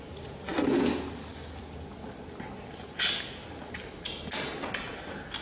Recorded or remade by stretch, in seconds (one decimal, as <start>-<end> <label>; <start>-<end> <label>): 0.0-5.4 recorded